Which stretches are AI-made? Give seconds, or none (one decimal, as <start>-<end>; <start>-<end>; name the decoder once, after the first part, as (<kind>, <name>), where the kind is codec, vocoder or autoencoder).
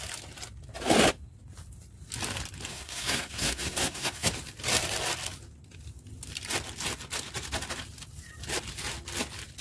2.7-4.3 (codec, SNAC)